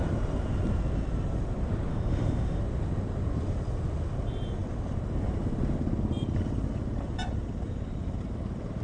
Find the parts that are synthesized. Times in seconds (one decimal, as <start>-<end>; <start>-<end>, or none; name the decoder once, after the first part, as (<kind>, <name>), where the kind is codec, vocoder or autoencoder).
1.9-2.6 (autoencoder, DAC-VAE)